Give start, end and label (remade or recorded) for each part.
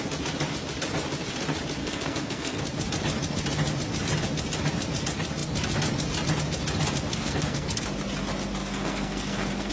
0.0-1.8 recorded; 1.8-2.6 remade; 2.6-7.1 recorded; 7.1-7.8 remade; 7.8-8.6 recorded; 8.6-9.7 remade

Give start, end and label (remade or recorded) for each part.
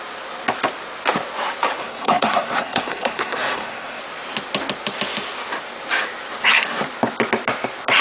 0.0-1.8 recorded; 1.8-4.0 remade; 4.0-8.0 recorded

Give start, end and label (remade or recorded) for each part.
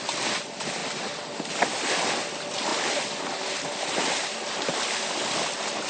0.0-5.9 recorded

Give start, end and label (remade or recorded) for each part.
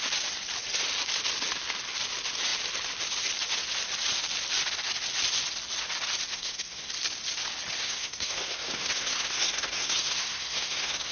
0.0-6.3 recorded; 6.3-6.9 remade; 6.9-7.8 recorded; 7.8-11.1 remade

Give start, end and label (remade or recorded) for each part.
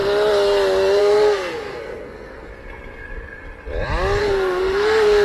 0.0-1.0 recorded; 1.0-2.5 remade; 2.5-4.2 recorded; 4.2-5.2 remade